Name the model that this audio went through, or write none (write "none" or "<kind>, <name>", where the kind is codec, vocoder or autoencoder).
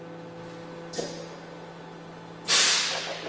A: none